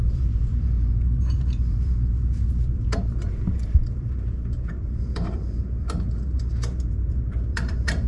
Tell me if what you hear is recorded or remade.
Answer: remade